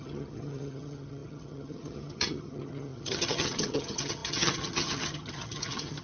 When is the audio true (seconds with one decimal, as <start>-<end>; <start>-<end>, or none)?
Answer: none